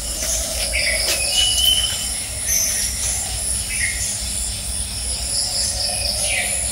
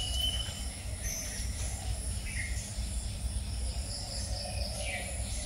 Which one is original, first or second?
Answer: first